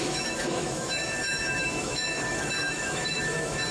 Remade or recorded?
remade